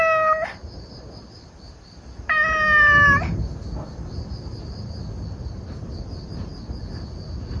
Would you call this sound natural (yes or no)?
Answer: yes